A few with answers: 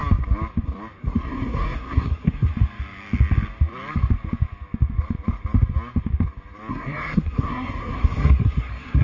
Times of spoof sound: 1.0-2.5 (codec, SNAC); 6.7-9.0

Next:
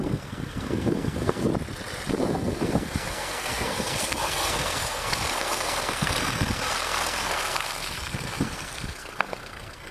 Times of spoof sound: 0.0-1.5 (codec, SNAC); 2.1-9.9

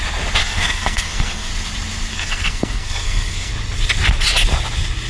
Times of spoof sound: 0.4-1.5 (codec, SNAC); 2.1-3.5